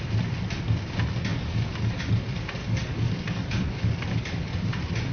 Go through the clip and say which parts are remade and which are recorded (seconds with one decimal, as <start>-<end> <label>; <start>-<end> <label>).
0.0-1.3 recorded; 1.3-2.0 remade; 2.0-2.6 recorded; 2.6-4.5 remade; 4.5-5.1 recorded